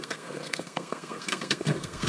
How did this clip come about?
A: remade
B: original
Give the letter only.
A